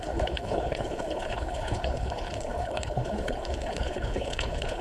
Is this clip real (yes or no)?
no